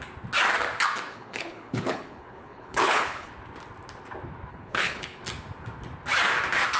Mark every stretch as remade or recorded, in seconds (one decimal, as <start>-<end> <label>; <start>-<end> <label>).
0.0-1.1 recorded; 1.1-3.3 remade; 3.3-4.5 recorded; 4.5-5.2 remade; 5.2-6.8 recorded